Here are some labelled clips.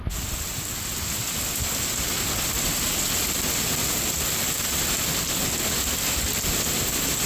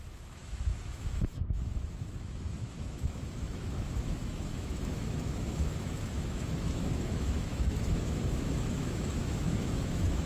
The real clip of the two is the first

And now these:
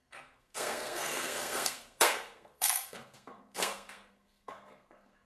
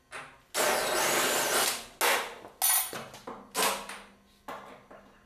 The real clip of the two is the second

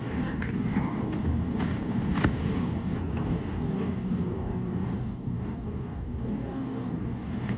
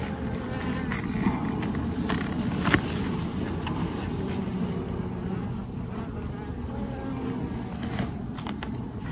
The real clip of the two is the second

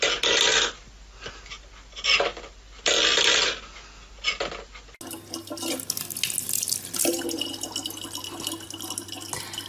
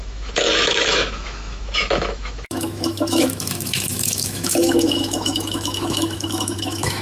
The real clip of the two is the first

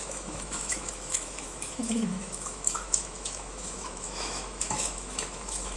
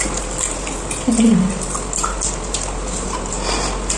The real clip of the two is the second